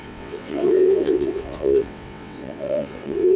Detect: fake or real fake